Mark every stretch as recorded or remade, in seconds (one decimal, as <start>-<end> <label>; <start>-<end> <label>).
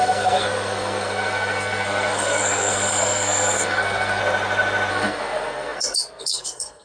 0.0-4.2 remade; 4.2-4.9 recorded; 4.9-6.8 remade